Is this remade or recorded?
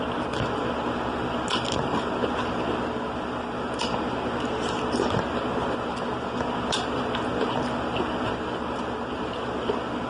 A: recorded